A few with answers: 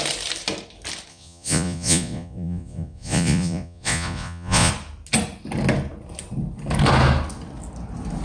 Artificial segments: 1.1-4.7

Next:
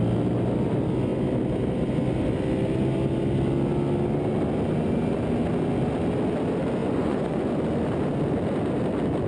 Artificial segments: 6.8-7.5

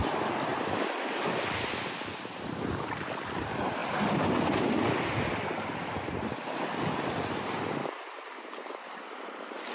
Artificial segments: none

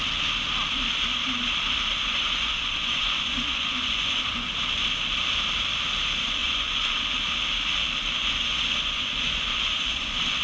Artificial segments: 1.9-4.5; 6.4-7.0; 8.2-10.4

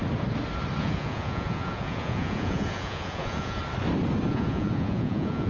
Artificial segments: 0.8-3.6; 4.3-5.5

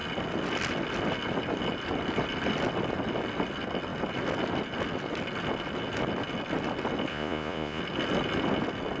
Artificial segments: 7.1-7.8